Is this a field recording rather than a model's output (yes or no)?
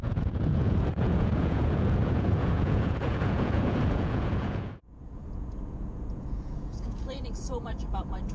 no